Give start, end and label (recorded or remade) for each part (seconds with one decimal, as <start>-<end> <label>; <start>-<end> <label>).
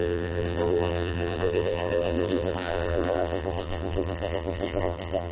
0.0-5.3 remade